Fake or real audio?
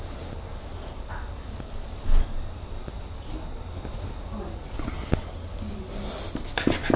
real